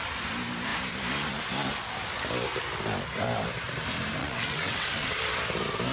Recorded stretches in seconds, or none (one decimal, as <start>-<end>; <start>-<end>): 0.0-4.2; 5.2-5.9